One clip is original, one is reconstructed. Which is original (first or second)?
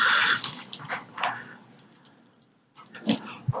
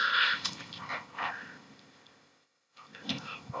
first